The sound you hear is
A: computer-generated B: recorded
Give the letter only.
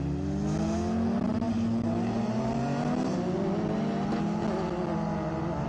B